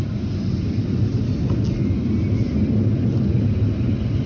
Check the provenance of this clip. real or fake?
real